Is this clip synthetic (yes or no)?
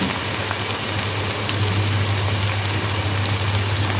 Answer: no